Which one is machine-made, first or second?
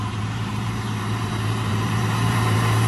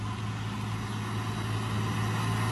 first